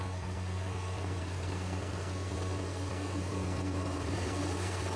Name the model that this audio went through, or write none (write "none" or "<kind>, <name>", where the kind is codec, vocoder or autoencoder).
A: codec, SNAC